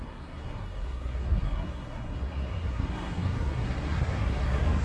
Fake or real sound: fake